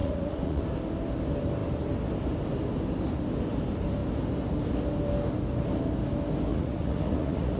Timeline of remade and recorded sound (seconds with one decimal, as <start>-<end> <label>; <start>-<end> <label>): 0.0-0.6 remade; 0.6-6.5 recorded; 6.5-7.6 remade

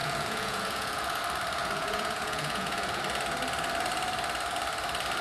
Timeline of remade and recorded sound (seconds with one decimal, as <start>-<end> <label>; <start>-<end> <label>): 0.0-1.2 remade; 1.2-1.6 recorded; 1.6-3.0 remade; 3.0-5.2 recorded

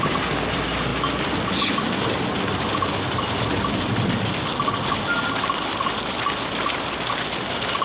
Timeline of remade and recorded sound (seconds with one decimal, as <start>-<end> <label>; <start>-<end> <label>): 0.0-7.8 recorded